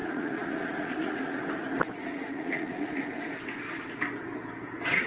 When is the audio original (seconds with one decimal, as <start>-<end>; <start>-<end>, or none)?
1.4-2.0; 3.1-5.1